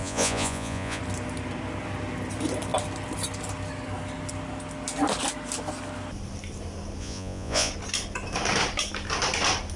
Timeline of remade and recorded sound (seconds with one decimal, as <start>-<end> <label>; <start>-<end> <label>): 0.0-1.0 remade; 1.0-7.0 recorded; 7.0-7.7 remade; 7.7-9.8 recorded